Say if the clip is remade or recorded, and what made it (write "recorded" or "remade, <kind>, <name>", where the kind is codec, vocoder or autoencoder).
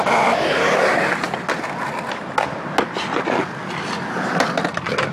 recorded